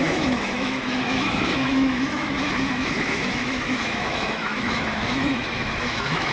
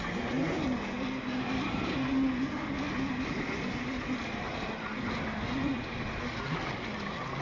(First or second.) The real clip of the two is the second